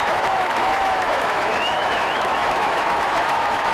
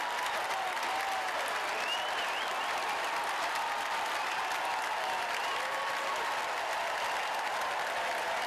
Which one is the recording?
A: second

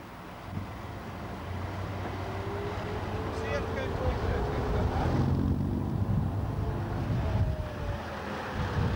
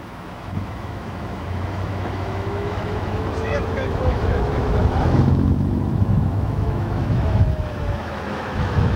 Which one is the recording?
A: first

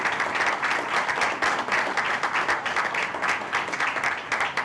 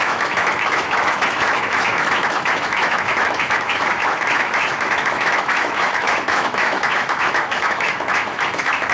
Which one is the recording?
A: first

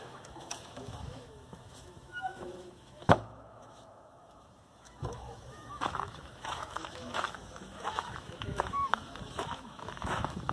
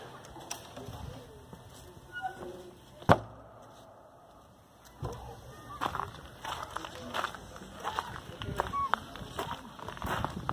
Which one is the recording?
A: second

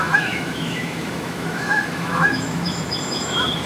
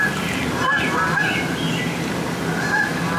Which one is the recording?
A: second